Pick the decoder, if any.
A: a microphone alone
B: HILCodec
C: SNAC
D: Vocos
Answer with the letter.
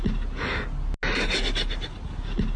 A